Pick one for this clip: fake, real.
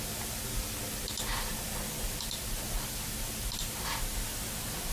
real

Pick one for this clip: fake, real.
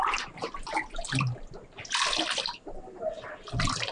real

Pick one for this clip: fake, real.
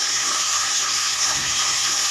fake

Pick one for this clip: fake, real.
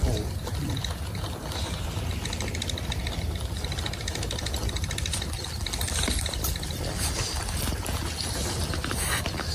real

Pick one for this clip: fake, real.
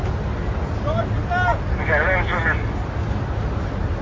real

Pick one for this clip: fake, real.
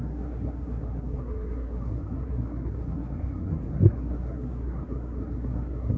fake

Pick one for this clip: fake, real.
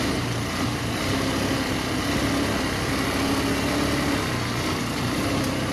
real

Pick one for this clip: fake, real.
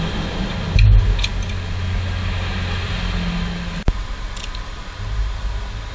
real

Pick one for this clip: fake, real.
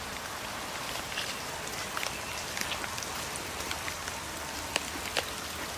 real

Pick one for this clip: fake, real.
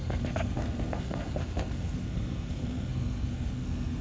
fake